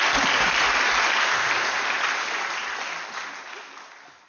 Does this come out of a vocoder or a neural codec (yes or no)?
no